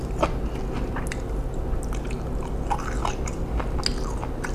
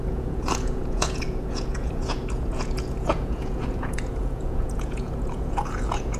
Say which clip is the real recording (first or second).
first